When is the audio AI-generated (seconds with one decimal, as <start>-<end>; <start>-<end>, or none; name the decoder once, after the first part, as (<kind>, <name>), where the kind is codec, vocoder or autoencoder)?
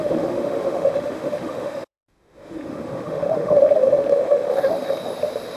0.0-5.0 (autoencoder, DAC-VAE)